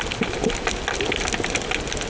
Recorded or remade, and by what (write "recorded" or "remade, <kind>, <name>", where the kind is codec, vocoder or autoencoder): recorded